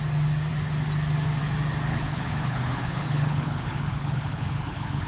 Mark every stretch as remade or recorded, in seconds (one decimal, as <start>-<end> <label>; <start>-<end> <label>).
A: 0.0-1.9 recorded; 1.9-5.1 remade